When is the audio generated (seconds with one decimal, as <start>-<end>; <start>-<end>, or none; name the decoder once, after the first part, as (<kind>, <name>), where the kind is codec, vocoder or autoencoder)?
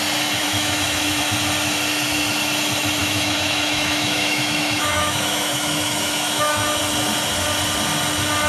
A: 0.4-1.2 (autoencoder, DAC-VAE); 3.0-6.8